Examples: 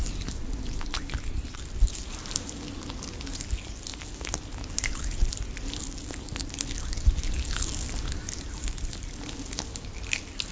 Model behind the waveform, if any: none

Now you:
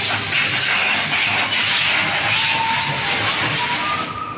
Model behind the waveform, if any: none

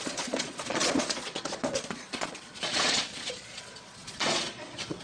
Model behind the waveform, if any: vocoder, Vocos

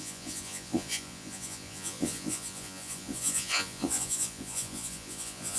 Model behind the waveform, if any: vocoder, Vocos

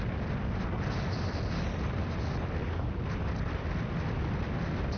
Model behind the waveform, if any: none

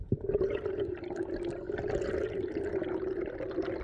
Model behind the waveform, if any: none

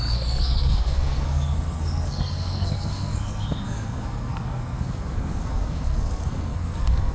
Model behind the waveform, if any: codec, SNAC